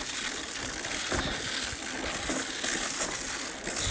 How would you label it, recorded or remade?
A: recorded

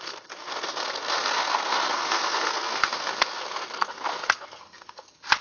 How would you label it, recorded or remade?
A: remade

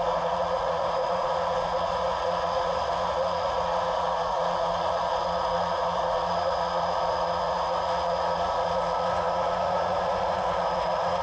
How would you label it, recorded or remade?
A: remade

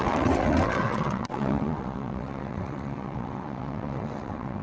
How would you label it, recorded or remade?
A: remade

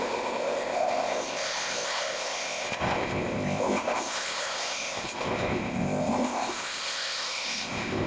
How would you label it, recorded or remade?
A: remade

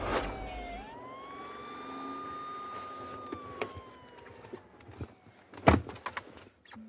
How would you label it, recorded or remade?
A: recorded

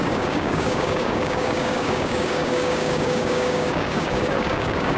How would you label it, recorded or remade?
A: remade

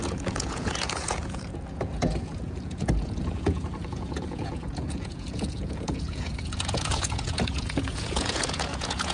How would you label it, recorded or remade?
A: remade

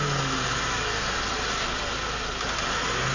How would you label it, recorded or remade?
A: recorded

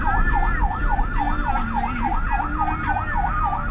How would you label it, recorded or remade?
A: recorded